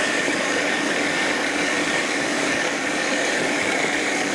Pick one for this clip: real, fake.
fake